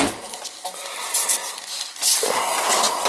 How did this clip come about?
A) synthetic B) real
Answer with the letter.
B